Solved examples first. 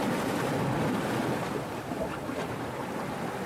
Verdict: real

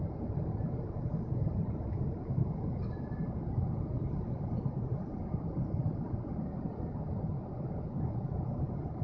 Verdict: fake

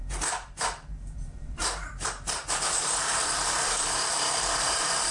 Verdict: fake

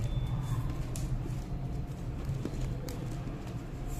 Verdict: fake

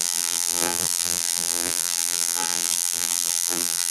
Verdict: fake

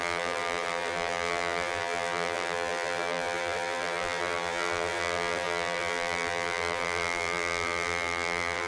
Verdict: fake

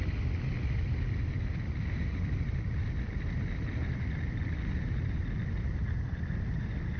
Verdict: real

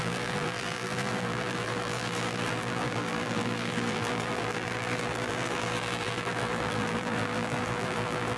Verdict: fake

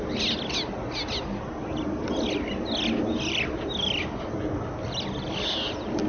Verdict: real